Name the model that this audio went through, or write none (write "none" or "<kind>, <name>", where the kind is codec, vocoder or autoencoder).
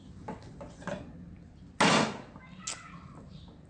none